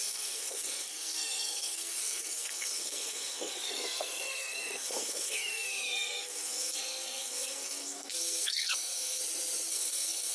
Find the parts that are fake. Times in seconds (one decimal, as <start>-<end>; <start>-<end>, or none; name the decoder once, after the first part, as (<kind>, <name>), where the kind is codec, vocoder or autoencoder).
0.0-9.2 (codec, SNAC); 9.7-10.3